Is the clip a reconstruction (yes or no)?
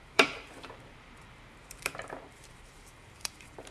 yes